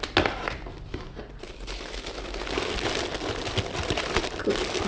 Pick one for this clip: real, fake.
real